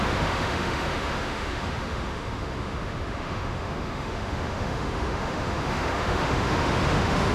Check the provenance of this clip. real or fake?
fake